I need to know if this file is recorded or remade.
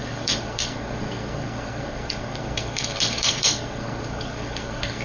remade